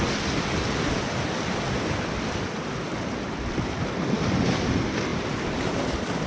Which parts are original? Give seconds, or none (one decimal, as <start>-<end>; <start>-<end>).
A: 0.0-6.3